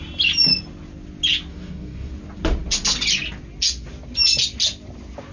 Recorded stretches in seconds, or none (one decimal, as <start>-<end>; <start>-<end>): 0.0-1.5; 2.1-5.3